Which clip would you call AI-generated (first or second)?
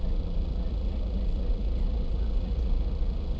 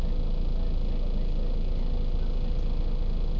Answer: first